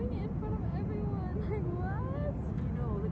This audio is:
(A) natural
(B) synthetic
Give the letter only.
A